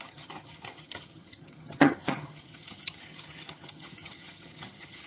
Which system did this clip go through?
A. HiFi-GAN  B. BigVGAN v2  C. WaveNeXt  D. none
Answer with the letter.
A